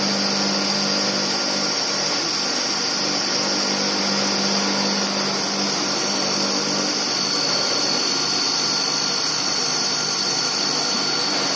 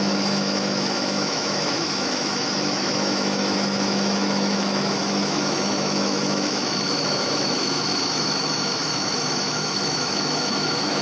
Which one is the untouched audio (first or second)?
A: first